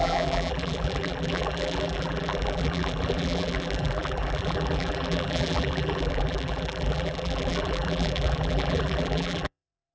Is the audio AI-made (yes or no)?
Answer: yes